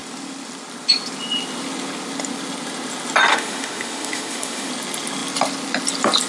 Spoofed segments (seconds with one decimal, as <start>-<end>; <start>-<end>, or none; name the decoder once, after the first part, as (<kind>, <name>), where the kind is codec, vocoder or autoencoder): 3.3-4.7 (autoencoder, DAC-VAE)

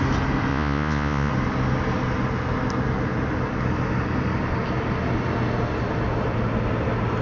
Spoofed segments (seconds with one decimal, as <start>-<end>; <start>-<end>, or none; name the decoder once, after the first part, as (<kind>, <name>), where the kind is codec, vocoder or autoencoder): 0.5-1.3 (vocoder, Vocos)

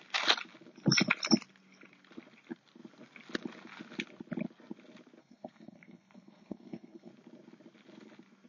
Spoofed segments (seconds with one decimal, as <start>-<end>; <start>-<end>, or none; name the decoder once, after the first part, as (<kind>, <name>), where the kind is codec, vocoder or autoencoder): 5.2-7.1 (codec, SNAC)

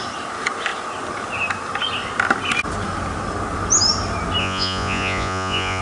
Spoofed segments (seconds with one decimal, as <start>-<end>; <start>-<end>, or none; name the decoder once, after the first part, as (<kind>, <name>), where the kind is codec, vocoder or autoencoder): 4.4-5.8 (vocoder, Vocos)